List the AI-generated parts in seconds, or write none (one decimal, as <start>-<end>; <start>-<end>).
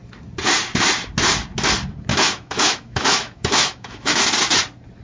2.1-4.2